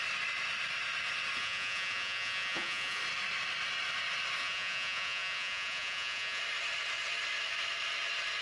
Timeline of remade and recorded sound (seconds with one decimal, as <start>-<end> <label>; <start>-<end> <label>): 0.0-1.4 recorded; 1.4-3.0 remade; 3.0-4.4 recorded; 4.4-6.4 remade; 6.4-8.4 recorded